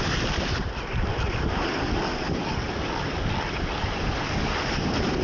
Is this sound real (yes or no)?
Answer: yes